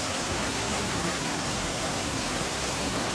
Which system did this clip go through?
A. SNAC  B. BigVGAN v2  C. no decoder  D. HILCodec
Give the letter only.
A